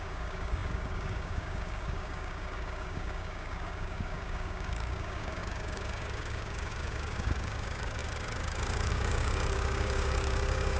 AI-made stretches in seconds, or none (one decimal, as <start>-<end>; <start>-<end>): 0.0-10.8